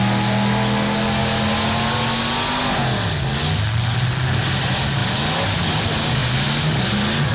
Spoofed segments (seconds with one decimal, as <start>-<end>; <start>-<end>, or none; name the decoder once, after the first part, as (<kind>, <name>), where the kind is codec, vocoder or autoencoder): none